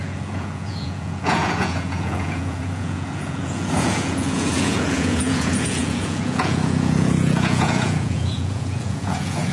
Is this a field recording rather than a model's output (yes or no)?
no